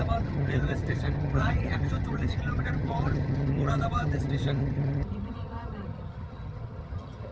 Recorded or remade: remade